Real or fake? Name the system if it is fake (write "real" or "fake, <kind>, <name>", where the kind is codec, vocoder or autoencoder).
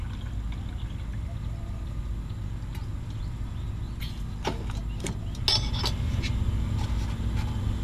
real